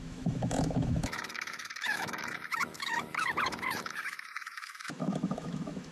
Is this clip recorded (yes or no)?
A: no